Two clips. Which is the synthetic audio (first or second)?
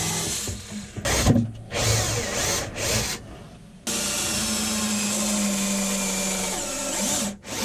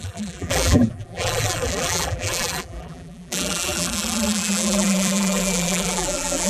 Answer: second